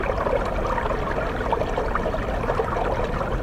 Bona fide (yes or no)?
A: yes